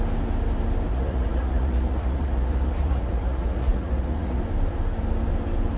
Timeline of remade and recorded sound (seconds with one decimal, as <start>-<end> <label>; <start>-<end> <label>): 0.0-0.9 recorded; 0.9-4.4 remade; 4.4-5.8 recorded